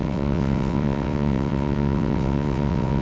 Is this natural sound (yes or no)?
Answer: no